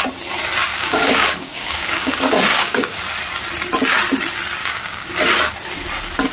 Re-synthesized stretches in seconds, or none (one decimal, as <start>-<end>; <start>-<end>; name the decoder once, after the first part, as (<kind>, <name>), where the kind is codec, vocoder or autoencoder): 0.7-3.0 (codec, DAC); 4.6-5.1